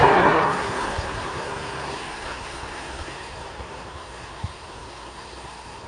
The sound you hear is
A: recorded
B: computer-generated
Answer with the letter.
B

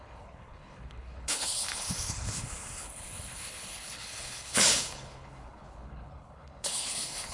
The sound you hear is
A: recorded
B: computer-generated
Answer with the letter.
B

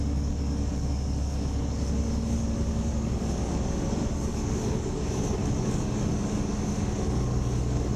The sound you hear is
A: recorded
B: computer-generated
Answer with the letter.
B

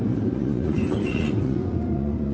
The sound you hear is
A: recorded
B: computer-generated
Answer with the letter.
B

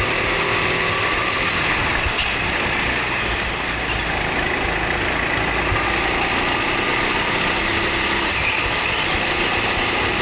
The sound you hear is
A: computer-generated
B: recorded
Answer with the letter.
B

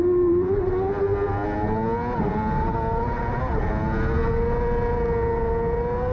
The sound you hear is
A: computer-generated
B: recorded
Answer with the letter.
B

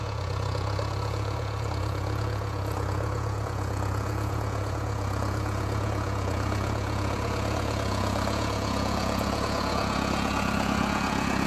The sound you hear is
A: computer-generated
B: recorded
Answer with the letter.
A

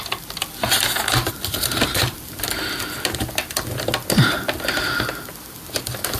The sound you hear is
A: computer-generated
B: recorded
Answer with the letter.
B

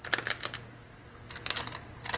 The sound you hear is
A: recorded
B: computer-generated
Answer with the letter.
A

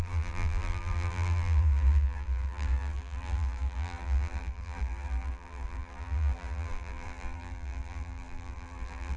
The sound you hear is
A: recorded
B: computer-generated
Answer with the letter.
B